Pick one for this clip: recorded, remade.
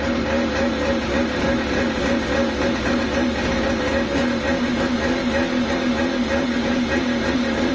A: recorded